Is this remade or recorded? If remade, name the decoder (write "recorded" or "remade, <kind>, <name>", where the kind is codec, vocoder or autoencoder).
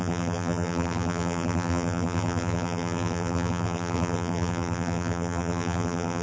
remade, vocoder, BigVGAN v2